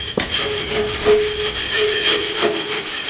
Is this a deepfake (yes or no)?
yes